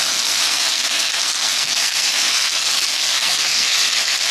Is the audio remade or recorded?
remade